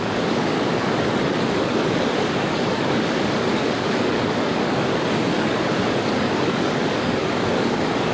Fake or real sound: fake